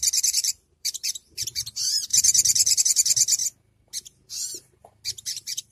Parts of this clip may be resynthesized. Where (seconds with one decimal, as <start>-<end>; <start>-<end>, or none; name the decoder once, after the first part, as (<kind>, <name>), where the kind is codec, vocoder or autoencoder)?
0.0-3.4 (vocoder, BigVGAN v2); 4.3-4.8; 5.3-5.7